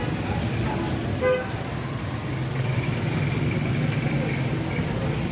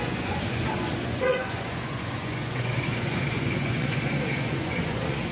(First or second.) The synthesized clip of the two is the second